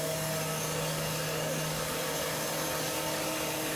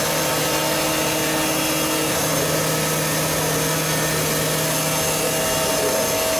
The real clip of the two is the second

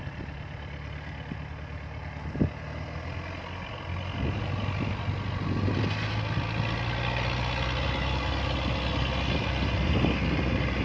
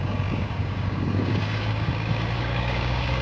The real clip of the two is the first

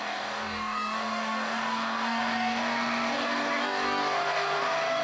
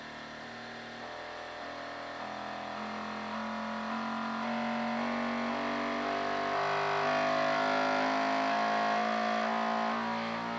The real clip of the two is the second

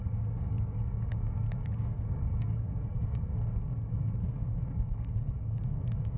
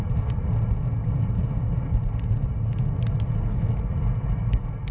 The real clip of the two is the second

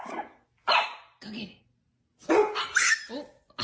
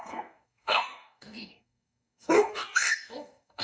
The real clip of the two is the first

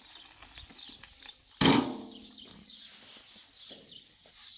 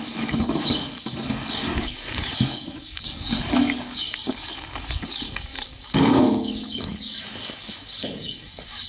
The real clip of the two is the first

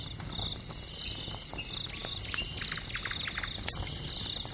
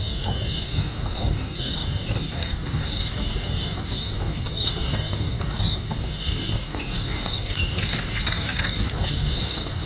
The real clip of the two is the first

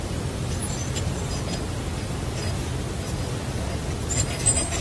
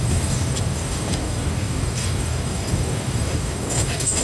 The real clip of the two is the first